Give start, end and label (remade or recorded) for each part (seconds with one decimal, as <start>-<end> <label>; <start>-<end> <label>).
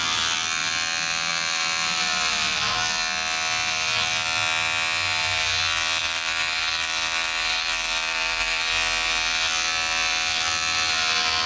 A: 0.0-6.0 recorded; 6.0-8.7 remade; 8.7-11.5 recorded